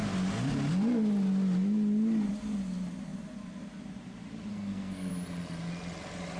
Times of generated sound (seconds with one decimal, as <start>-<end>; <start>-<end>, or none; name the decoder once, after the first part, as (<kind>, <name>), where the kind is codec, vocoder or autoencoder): 4.5-5.1 (codec, SNAC)